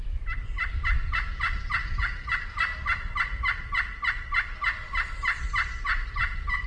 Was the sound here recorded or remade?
recorded